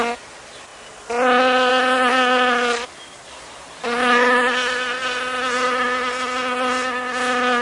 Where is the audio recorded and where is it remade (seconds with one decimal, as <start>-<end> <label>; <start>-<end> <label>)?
0.0-7.6 recorded